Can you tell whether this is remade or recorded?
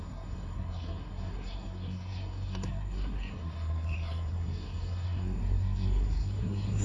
remade